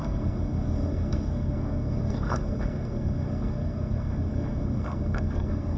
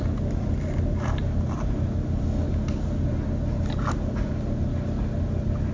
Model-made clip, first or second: first